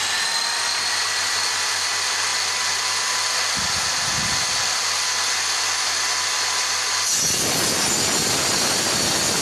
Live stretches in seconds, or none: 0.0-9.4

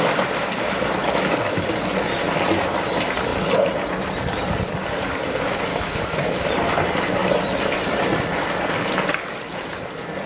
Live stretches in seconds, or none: 0.0-1.0; 1.6-5.7; 6.5-10.3

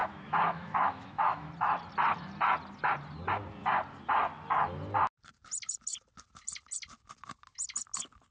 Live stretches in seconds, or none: 1.5-8.3

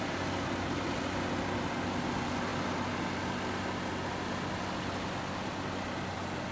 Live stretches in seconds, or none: 0.0-6.5

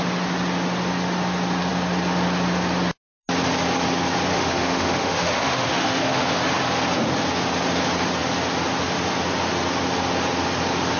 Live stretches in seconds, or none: 0.0-4.3; 6.2-11.0

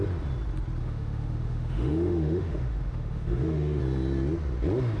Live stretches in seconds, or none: 0.0-0.8; 3.8-5.0

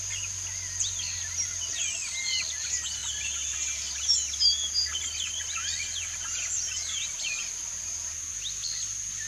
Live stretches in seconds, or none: 0.0-9.3